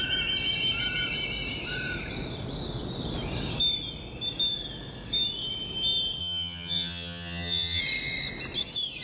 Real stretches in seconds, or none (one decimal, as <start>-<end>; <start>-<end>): 0.0-6.2; 7.8-9.0